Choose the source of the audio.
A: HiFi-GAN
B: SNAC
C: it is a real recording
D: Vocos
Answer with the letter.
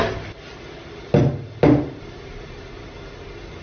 C